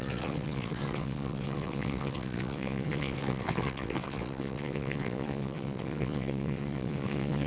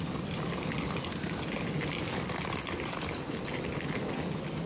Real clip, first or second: second